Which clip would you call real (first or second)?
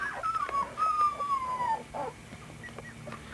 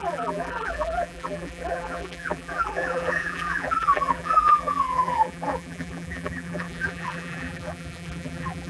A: first